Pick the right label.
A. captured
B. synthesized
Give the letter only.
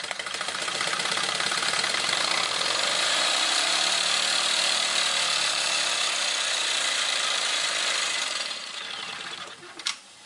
B